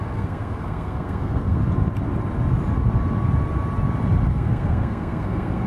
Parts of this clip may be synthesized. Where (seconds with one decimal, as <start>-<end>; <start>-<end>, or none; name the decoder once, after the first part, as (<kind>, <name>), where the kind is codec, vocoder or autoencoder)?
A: 0.0-1.6 (codec, SNAC); 4.3-5.7